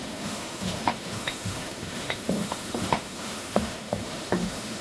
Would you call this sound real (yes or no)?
no